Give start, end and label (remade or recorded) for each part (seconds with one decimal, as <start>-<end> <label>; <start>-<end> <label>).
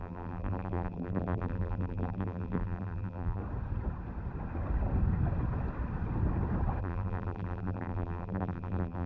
0.0-3.4 remade; 3.4-6.8 recorded; 6.8-9.1 remade